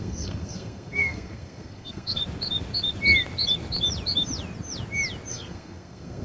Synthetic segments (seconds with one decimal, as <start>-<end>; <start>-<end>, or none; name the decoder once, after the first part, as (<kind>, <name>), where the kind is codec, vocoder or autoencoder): 0.0-2.2 (codec, SNAC); 5.3-6.2